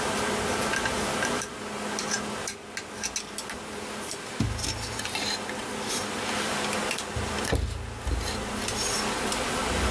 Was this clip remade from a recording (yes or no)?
no